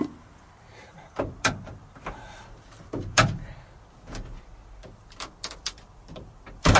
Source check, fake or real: fake